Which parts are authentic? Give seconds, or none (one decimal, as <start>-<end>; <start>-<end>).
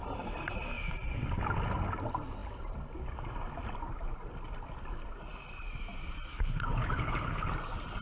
0.0-6.3; 7.5-8.0